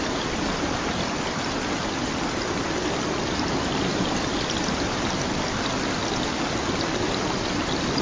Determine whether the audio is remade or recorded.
recorded